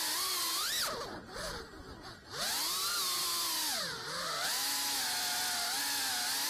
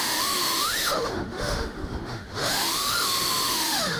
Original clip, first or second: first